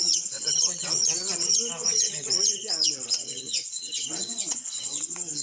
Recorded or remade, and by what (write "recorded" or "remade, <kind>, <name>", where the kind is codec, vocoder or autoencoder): remade, vocoder, WaveNeXt